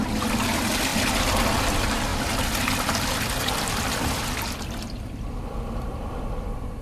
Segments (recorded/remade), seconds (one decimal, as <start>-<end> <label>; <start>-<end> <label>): 0.0-6.8 recorded